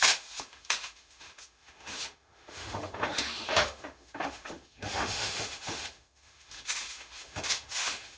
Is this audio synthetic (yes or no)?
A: yes